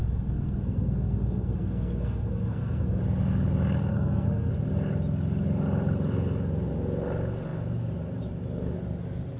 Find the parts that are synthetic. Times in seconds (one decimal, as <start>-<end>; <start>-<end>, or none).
0.0-3.0; 3.9-4.5